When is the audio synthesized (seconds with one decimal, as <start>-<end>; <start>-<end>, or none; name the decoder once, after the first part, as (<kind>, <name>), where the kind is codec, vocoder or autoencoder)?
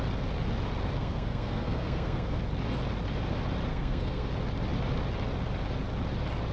1.0-2.4 (codec, SNAC); 3.7-4.3